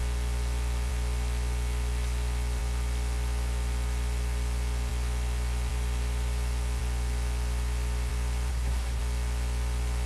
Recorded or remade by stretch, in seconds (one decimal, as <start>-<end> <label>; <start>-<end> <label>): 0.0-8.5 recorded; 8.5-9.0 remade; 9.0-10.1 recorded